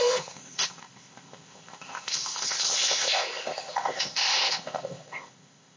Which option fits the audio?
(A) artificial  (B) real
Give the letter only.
A